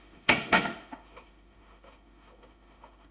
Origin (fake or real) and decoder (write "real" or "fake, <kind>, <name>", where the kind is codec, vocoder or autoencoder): fake, autoencoder, DAC-VAE